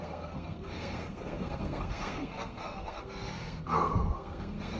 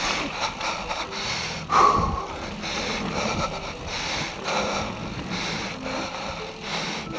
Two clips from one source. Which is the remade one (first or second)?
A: first